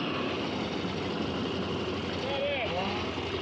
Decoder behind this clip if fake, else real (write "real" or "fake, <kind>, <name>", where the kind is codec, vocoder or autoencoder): real